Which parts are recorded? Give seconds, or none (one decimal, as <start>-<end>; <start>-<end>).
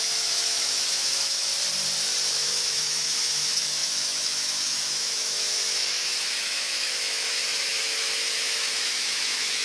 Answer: 1.5-2.3